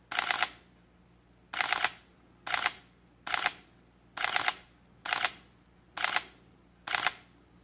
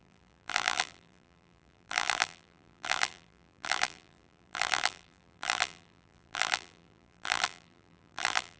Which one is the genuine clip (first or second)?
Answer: first